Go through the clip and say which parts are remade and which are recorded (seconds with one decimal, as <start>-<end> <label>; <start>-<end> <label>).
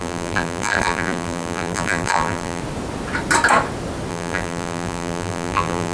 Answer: 0.0-2.6 remade; 2.6-4.1 recorded; 4.1-5.9 remade